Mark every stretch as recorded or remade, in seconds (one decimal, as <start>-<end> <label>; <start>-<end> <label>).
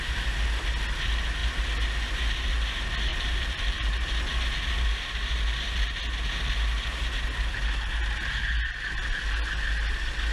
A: 0.0-3.1 recorded; 3.1-4.1 remade; 4.1-10.3 recorded